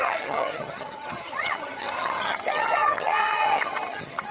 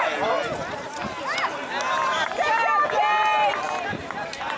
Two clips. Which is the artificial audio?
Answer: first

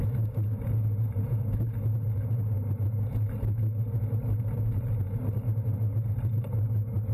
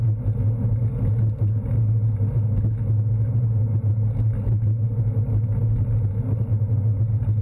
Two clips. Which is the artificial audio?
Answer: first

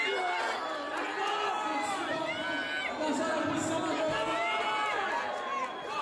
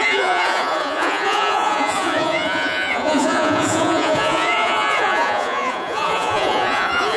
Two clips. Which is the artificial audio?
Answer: second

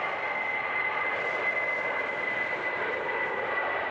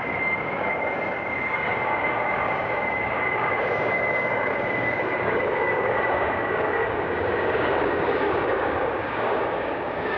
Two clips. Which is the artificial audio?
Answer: second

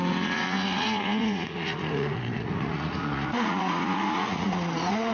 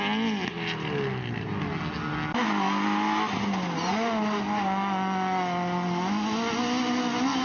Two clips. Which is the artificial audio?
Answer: first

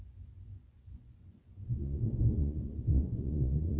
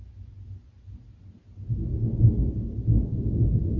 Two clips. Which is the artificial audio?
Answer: first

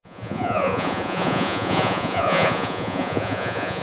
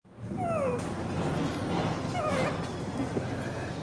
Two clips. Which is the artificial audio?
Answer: first